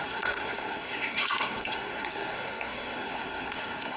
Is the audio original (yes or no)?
no